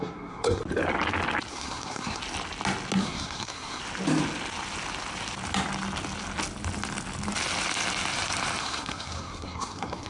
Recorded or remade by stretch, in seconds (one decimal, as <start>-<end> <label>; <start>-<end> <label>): 0.0-0.6 remade; 0.6-1.5 recorded; 1.5-2.2 remade; 2.2-3.0 recorded; 3.0-3.8 remade; 3.8-8.6 recorded; 8.6-10.1 remade